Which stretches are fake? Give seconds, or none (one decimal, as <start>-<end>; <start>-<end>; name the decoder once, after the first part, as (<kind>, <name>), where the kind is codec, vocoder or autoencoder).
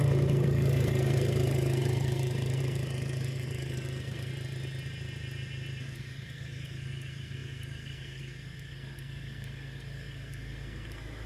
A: 0.0-4.3 (codec, SNAC); 5.8-11.3